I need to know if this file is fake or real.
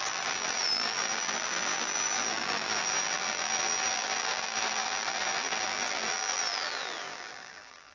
fake